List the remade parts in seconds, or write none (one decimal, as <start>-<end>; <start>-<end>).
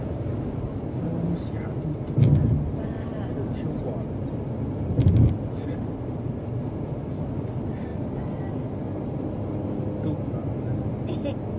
none